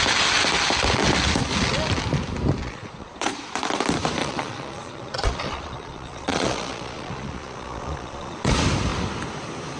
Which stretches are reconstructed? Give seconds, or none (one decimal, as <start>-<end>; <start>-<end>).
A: 2.6-3.4; 4.2-8.5